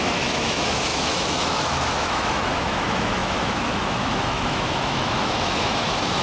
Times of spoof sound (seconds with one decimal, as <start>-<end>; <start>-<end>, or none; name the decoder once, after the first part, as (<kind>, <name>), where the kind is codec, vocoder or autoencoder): 0.0-6.2 (autoencoder, DAC-VAE)